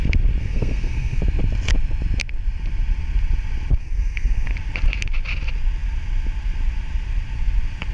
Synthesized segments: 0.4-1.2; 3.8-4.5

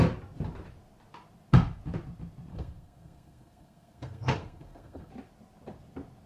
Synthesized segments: 2.5-5.1

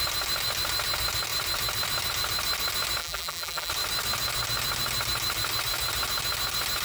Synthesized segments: 3.0-3.7

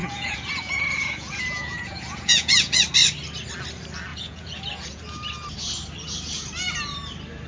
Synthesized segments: 0.0-2.8; 4.1-5.0

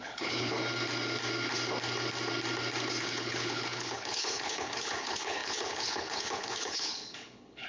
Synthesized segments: 0.0-0.6; 3.0-7.7